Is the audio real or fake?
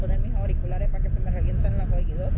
real